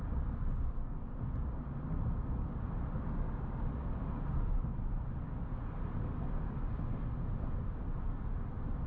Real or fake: real